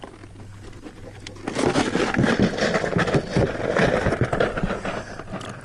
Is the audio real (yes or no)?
yes